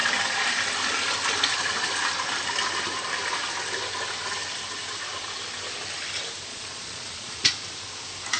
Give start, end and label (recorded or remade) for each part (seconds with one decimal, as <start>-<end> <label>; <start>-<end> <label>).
0.0-6.5 recorded; 6.5-7.5 remade; 7.5-8.4 recorded